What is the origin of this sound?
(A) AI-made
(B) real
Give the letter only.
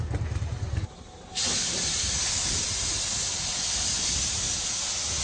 B